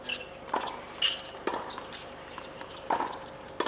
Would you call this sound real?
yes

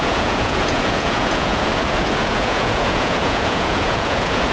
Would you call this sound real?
no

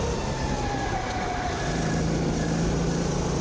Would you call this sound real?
yes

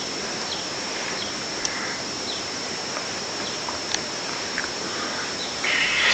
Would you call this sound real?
yes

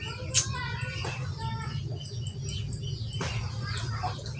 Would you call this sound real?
yes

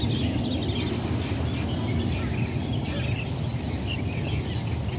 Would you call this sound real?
yes